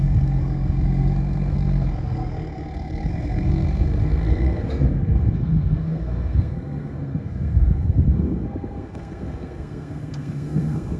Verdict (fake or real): fake